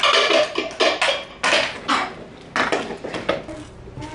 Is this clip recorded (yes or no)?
yes